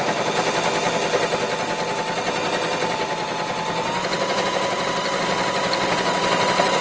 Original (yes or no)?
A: yes